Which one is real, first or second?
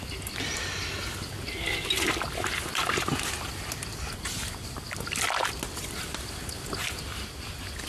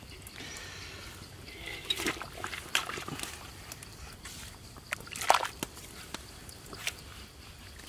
first